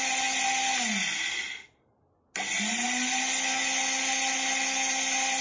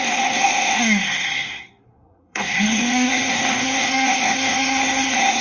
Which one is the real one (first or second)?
first